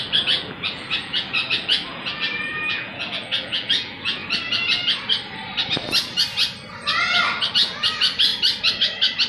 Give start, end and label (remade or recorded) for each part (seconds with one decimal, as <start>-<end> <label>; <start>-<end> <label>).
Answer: 0.0-4.2 remade; 4.2-7.5 recorded; 7.5-8.3 remade; 8.3-9.3 recorded